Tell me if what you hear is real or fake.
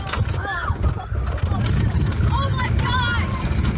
real